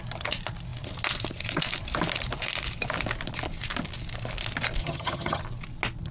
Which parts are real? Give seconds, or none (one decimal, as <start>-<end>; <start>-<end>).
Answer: 0.0-4.8; 5.4-6.1